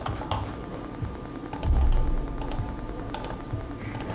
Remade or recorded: recorded